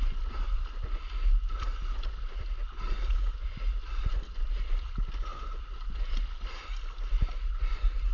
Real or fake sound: real